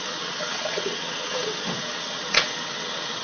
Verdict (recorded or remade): remade